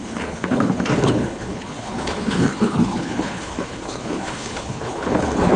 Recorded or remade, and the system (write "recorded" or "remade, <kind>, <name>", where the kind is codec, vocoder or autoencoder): remade, codec, HILCodec